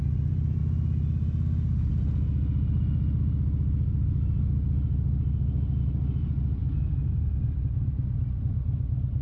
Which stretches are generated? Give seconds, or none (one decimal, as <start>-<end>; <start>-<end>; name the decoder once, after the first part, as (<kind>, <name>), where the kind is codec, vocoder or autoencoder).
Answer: 0.0-0.6 (vocoder, BigVGAN v2); 5.8-9.2